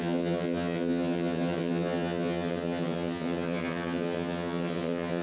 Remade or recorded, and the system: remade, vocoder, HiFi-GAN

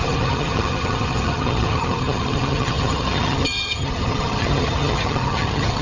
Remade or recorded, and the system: remade, vocoder, HiFi-GAN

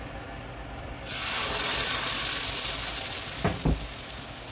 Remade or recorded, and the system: recorded